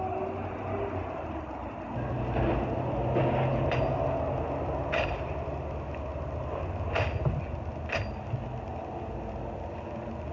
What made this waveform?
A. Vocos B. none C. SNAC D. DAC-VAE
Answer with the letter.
B